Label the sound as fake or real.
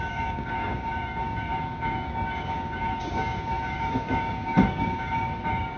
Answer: fake